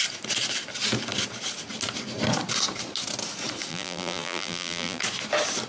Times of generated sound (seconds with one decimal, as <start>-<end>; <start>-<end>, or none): 3.7-5.0